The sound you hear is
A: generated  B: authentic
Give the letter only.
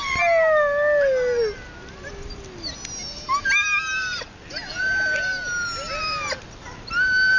B